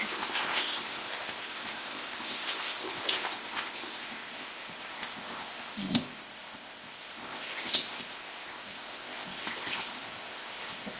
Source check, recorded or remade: remade